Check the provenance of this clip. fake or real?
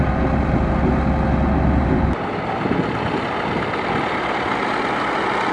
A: real